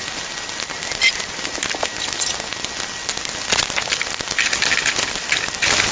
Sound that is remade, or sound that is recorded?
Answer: recorded